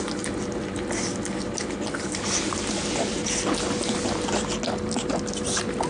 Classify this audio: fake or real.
real